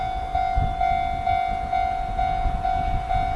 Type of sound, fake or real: real